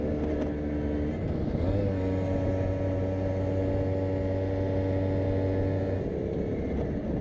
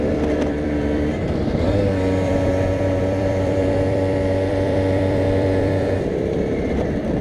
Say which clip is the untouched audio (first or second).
first